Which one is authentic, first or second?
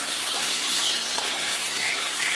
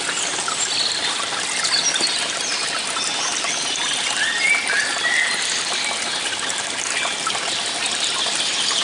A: second